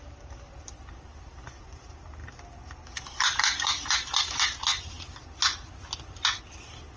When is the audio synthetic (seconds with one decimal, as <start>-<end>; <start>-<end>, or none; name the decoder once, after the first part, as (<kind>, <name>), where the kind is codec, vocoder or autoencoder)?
none